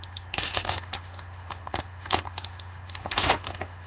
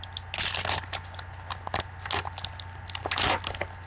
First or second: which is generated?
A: first